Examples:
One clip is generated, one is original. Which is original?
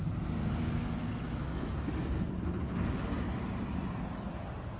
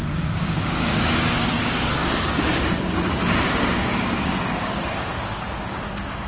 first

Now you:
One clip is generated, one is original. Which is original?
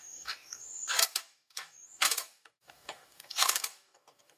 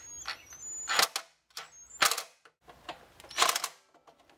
second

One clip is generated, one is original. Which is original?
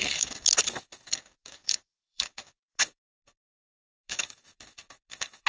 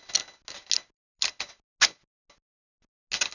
second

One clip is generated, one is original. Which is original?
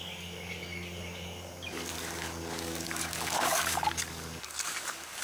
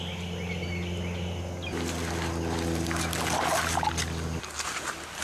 second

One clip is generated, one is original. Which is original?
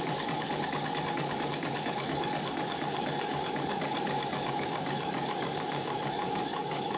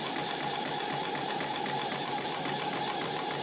second